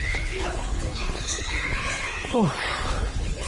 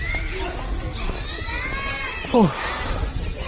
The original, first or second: second